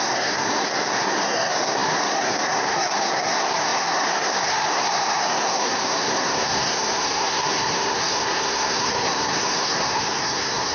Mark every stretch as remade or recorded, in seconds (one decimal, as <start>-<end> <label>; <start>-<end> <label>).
0.0-10.7 remade